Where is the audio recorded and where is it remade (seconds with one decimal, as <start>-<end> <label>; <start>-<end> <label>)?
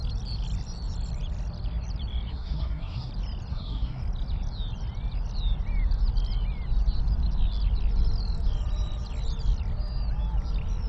0.0-2.3 recorded; 2.3-3.1 remade; 3.1-3.5 recorded; 3.5-4.0 remade; 4.0-10.9 recorded